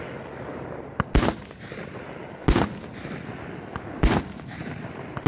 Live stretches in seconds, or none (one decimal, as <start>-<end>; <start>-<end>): 0.0-5.3